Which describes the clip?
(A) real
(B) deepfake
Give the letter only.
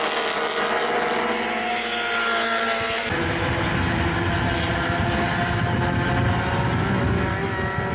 A